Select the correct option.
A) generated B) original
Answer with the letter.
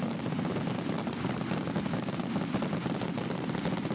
B